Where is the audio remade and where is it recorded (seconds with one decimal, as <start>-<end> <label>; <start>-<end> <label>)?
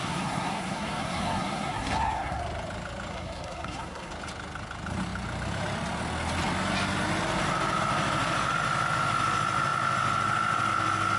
0.0-2.4 remade; 2.4-3.1 recorded; 3.1-4.1 remade; 4.1-11.2 recorded